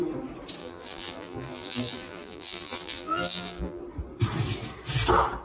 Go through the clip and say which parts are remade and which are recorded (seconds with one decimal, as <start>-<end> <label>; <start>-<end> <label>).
0.0-0.6 recorded; 0.6-3.8 remade; 3.8-5.4 recorded

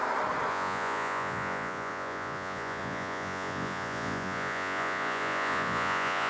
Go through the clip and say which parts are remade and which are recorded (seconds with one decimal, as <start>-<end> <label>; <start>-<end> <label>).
0.0-0.5 recorded; 0.5-6.3 remade